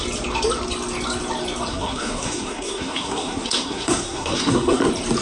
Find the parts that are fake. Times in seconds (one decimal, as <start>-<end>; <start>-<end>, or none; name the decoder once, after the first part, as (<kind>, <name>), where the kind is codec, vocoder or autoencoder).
1.7-4.8 (codec, SNAC)

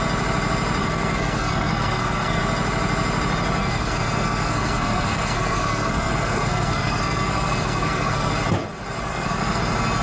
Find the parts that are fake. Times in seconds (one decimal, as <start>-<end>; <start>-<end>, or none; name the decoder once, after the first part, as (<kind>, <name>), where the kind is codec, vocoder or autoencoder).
0.8-2.4 (codec, SNAC); 3.6-8.3; 9.1-9.6

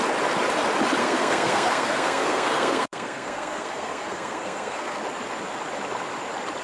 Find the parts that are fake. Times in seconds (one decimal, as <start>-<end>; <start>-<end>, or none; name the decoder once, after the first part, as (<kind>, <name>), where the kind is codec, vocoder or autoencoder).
1.0-5.0 (codec, SNAC)

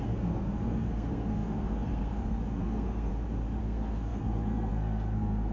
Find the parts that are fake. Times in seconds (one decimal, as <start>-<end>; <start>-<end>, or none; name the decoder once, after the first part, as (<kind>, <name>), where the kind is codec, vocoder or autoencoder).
0.0-3.1 (codec, SNAC); 3.6-5.5

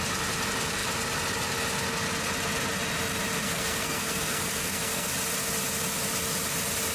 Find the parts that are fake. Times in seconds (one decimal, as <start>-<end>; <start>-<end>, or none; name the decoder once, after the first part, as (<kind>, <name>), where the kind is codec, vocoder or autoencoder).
3.4-5.1 (codec, SNAC)

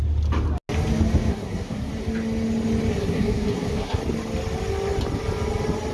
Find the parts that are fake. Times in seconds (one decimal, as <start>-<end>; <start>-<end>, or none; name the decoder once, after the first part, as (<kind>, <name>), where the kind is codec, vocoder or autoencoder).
1.3-1.9 (codec, SNAC); 2.9-4.0

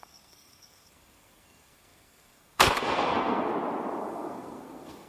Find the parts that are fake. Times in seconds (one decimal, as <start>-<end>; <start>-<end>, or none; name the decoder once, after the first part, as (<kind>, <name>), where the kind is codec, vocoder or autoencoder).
0.0-3.5 (codec, SNAC); 4.0-5.1